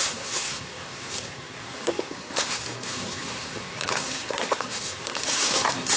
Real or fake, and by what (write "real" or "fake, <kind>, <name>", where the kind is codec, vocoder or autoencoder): fake, codec, SNAC